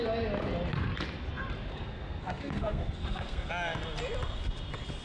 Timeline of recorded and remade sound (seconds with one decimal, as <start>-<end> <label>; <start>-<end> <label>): 0.0-1.7 recorded; 1.7-3.5 remade; 3.5-5.0 recorded